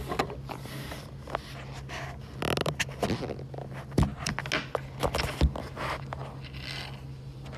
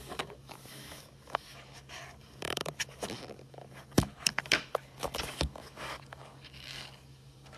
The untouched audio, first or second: first